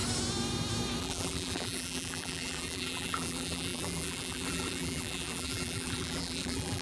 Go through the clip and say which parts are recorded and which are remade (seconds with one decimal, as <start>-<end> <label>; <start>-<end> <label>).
0.0-1.0 recorded; 1.0-6.8 remade